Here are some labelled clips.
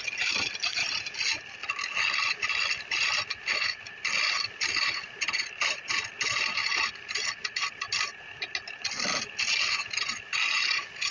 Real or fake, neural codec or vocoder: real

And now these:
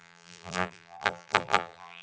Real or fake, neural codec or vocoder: fake, vocoder, BigVGAN v2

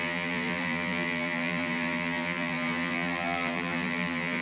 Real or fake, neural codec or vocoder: fake, vocoder, BigVGAN v2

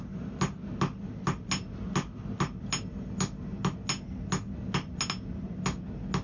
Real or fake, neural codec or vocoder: real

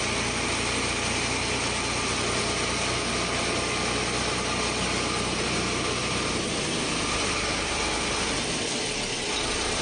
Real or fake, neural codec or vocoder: real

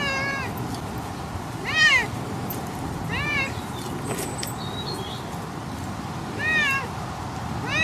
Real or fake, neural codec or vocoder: real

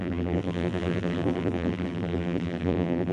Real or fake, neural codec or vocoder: fake, vocoder, BigVGAN v2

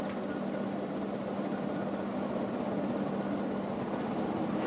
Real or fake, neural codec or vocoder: real